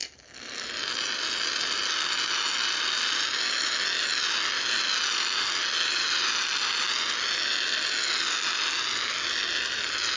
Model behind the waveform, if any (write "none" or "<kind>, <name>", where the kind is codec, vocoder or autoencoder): none